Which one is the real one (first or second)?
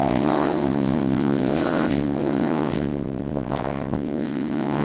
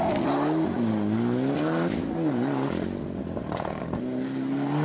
second